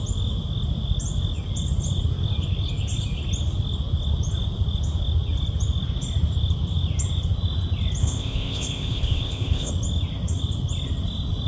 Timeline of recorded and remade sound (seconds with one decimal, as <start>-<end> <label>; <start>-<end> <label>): 0.0-8.0 recorded; 8.0-9.7 remade; 9.7-11.5 recorded